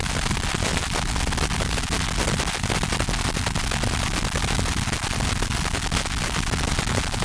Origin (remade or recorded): recorded